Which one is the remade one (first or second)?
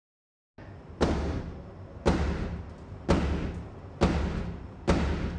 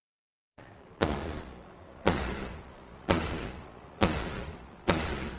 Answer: second